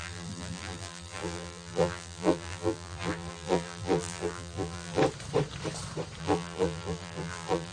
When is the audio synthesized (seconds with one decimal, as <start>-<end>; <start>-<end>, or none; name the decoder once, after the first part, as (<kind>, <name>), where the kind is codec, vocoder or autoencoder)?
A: 0.0-5.0 (vocoder, BigVGAN v2); 6.2-7.7